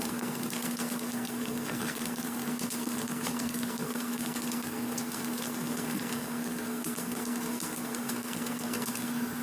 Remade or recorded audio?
remade